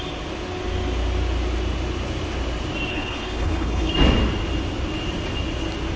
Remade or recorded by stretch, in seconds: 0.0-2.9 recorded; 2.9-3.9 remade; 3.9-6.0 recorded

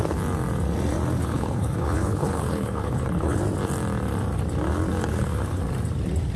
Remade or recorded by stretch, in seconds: 0.0-1.2 recorded; 1.2-3.4 remade; 3.4-5.1 recorded; 5.1-5.6 remade; 5.6-6.4 recorded

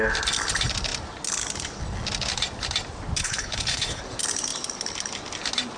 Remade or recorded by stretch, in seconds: 0.0-3.2 recorded; 3.2-4.0 remade; 4.0-5.8 recorded

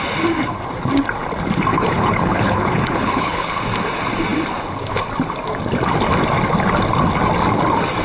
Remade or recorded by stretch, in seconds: 0.0-1.7 recorded; 1.7-3.6 remade; 3.6-8.0 recorded

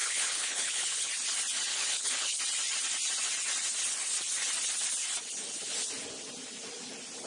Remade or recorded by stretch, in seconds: 0.0-1.1 remade; 1.1-1.7 recorded; 1.7-2.4 remade; 2.4-7.3 recorded

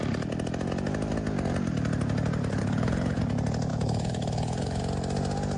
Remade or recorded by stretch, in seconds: 0.0-2.6 recorded; 2.6-3.2 remade; 3.2-3.7 recorded; 3.7-4.8 remade; 4.8-5.6 recorded

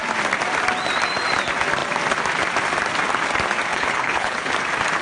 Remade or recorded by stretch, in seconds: 0.0-3.7 recorded; 3.7-4.5 remade; 4.5-5.0 recorded